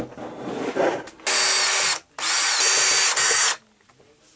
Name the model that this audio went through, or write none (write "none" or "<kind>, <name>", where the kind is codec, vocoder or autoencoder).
none